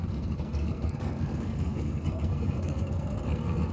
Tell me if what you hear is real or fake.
fake